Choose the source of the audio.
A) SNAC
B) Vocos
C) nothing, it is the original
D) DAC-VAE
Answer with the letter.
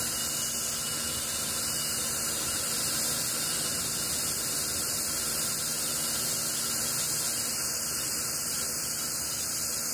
C